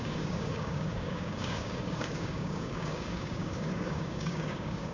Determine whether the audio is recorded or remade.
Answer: remade